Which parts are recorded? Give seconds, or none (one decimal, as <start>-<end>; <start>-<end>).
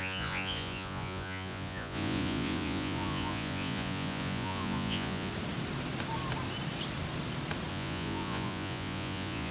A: 5.3-7.7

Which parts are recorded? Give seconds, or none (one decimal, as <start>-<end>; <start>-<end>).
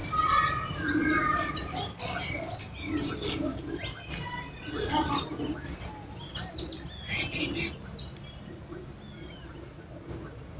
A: 0.0-10.6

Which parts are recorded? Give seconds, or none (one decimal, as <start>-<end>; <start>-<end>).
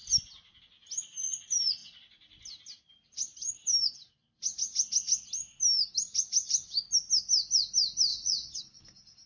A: 0.0-8.1; 8.6-9.3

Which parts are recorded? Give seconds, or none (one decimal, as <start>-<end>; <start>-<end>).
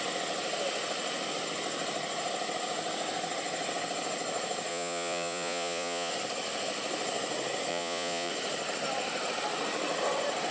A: 0.0-4.7; 6.1-7.7; 8.3-10.5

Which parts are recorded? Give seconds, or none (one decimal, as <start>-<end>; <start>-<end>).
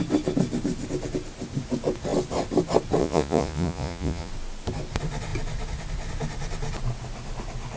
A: 0.0-3.0; 4.3-7.8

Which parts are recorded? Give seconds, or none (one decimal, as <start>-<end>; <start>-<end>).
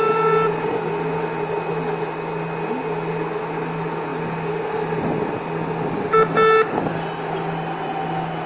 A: 0.0-8.5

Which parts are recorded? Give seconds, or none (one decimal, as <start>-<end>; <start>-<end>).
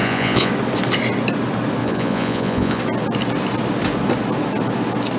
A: 0.5-1.8; 2.8-5.2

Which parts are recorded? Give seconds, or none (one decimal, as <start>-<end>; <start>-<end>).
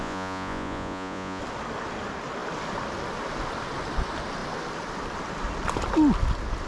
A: 1.4-6.7